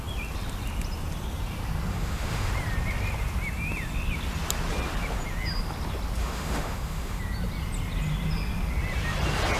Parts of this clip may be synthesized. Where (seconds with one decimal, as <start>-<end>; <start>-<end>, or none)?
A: 1.9-2.5; 6.2-7.2